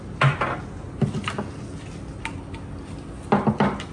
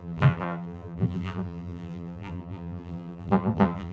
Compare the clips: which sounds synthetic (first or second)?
second